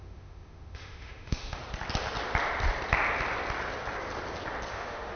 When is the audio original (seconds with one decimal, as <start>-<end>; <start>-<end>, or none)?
1.6-4.7